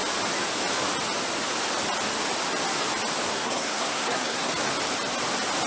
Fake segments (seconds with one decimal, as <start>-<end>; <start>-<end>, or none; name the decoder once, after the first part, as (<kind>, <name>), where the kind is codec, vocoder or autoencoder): 3.3-4.5 (codec, SNAC)